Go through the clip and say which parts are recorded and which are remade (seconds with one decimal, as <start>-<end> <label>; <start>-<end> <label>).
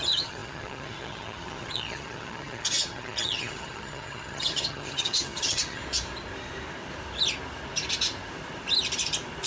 0.0-5.8 remade; 5.8-9.5 recorded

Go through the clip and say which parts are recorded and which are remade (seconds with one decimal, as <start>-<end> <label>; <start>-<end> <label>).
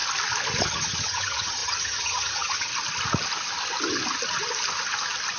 0.0-0.6 recorded; 0.6-2.7 remade; 2.7-5.4 recorded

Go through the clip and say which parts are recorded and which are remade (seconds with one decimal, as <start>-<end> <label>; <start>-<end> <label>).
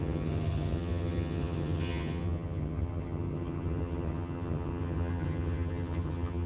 0.0-6.5 remade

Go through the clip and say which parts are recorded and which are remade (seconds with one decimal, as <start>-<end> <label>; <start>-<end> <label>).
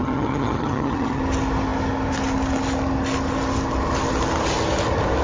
0.0-1.2 remade; 1.2-5.2 recorded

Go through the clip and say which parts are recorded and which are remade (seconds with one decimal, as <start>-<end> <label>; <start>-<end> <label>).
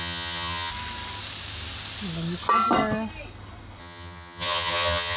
0.0-0.7 remade; 0.7-3.8 recorded; 3.8-5.2 remade